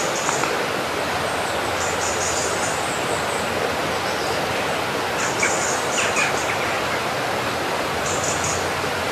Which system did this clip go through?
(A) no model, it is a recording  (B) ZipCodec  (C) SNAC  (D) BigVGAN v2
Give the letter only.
A